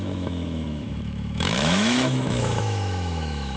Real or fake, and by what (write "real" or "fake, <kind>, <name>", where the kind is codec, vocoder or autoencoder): fake, autoencoder, DAC-VAE